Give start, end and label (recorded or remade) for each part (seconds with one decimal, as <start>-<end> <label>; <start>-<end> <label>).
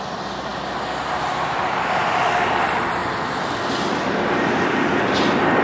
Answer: 0.0-5.6 recorded